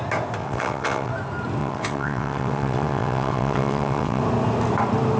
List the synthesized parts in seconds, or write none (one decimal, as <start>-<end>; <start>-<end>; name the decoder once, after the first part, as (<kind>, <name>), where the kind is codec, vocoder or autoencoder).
0.4-1.1 (vocoder, WaveNeXt); 1.6-4.2